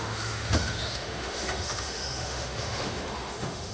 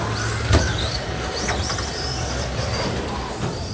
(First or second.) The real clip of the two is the second